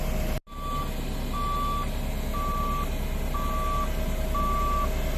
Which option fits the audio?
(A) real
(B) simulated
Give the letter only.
A